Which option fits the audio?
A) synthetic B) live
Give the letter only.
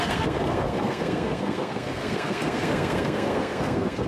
A